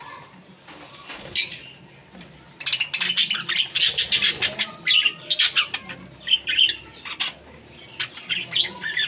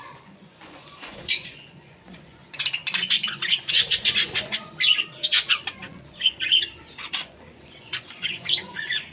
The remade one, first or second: second